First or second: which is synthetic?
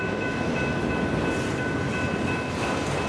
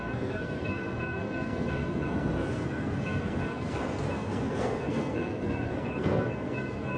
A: second